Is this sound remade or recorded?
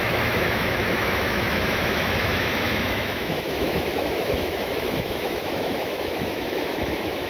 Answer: remade